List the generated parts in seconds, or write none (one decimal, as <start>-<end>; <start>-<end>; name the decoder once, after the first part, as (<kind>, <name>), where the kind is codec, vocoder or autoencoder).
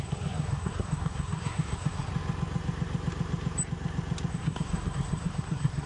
0.0-2.1 (codec, SNAC); 4.3-5.9